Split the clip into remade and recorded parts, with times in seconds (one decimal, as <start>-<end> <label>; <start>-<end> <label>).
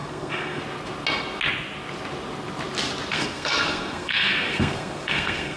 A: 0.0-0.6 remade; 0.6-3.1 recorded; 3.1-5.6 remade